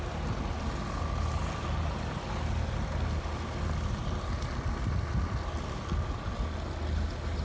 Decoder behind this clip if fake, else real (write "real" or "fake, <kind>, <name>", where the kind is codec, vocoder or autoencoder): real